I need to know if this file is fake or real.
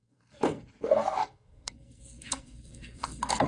fake